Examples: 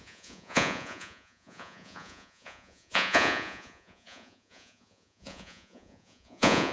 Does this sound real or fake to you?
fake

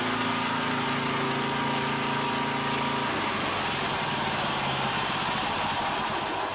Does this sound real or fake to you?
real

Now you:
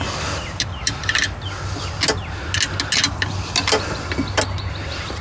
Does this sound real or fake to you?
real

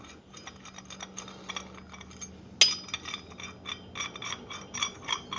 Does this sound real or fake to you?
real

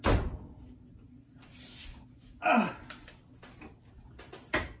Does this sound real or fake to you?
real